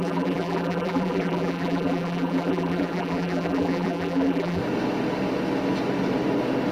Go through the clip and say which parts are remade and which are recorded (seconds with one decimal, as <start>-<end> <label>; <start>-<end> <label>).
0.0-4.6 remade; 4.6-6.7 recorded